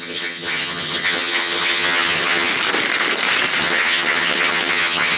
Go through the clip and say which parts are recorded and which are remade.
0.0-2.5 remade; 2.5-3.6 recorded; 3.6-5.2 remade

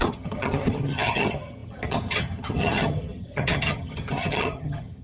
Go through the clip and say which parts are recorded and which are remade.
0.0-5.0 remade

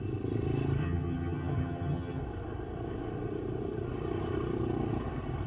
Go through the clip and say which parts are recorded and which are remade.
0.0-0.8 recorded; 0.8-2.2 remade; 2.2-5.5 recorded

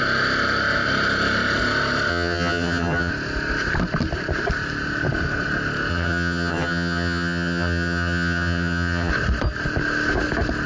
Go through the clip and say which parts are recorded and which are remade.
0.0-2.1 recorded; 2.1-3.1 remade; 3.1-5.9 recorded; 5.9-9.1 remade; 9.1-10.7 recorded